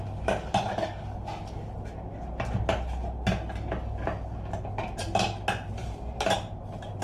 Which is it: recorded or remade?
recorded